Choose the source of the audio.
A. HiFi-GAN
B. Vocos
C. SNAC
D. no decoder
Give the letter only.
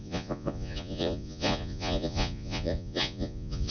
B